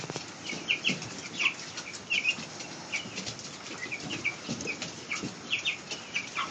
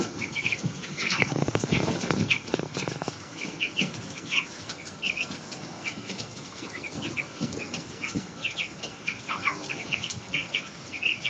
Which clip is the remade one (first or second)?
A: second